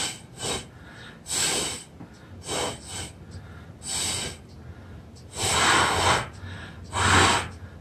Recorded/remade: recorded